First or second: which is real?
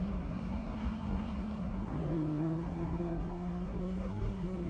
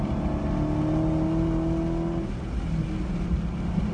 second